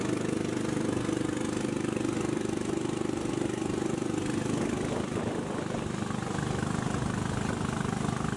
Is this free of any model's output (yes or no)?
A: yes